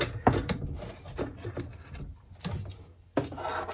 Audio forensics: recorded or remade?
recorded